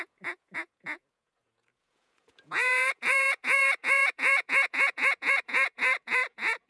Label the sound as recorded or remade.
remade